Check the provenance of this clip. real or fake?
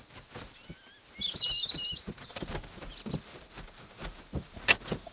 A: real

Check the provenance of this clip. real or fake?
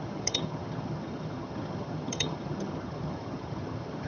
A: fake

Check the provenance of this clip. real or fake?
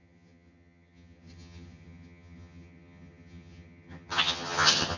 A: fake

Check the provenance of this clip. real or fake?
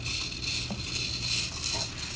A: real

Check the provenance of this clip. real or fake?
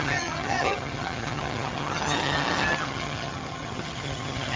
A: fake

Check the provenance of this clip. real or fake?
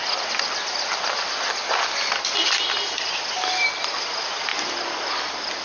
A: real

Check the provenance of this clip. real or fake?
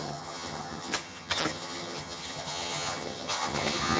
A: fake